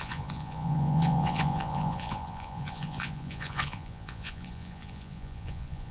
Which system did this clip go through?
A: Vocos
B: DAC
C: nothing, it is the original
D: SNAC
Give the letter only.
A